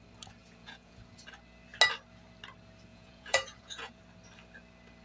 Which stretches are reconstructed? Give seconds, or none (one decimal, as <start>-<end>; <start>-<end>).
0.4-1.0; 2.9-4.0